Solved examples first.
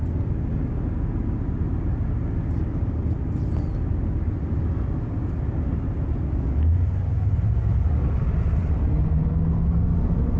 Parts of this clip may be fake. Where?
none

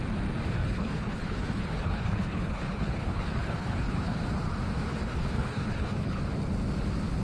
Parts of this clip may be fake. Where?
0.6-4.2 (codec, HILCodec); 4.9-6.2

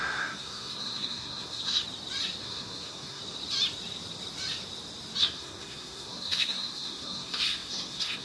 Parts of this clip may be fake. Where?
0.0-1.8 (codec, SNAC); 2.4-3.2; 5.2-8.2

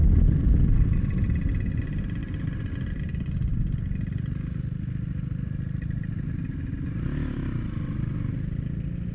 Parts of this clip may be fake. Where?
0.0-1.8 (vocoder, BigVGAN v2); 2.2-3.0

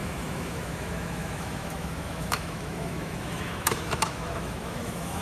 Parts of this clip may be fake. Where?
0.0-5.2 (autoencoder, DAC-VAE)